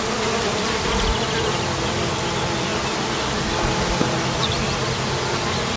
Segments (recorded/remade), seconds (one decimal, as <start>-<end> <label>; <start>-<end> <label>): 0.0-5.8 recorded